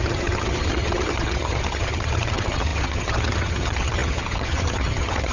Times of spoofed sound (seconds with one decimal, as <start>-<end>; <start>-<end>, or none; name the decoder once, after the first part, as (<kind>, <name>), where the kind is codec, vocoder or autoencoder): 0.0-5.3 (vocoder, HiFi-GAN)